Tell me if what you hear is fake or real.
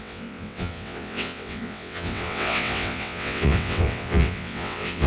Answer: fake